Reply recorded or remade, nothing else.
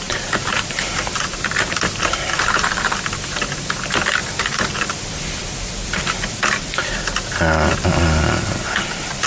remade